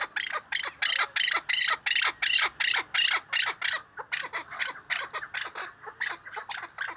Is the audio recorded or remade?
recorded